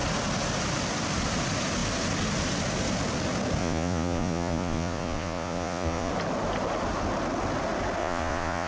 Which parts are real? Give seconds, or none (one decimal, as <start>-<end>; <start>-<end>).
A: 0.0-3.6; 6.1-8.0